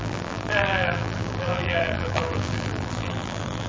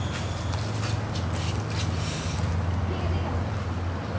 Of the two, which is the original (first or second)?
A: second